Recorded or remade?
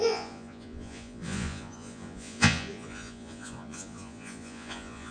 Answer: remade